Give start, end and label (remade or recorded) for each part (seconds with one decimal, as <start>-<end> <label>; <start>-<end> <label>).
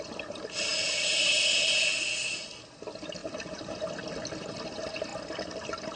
0.0-6.0 recorded